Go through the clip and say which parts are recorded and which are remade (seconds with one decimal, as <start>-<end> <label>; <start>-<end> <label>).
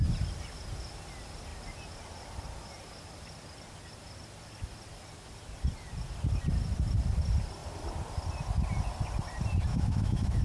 0.0-9.7 recorded; 9.7-10.4 remade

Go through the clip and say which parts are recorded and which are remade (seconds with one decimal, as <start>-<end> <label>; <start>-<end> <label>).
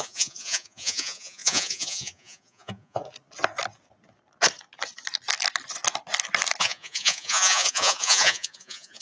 0.0-3.0 remade; 3.0-6.6 recorded; 6.6-9.0 remade